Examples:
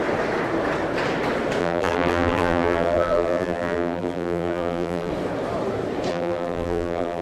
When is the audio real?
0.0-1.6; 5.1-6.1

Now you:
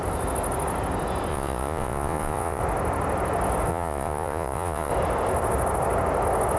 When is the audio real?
0.0-1.3; 2.6-3.7; 4.9-6.6

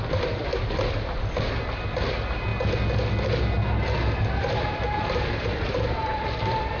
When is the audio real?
0.5-1.2; 2.5-4.4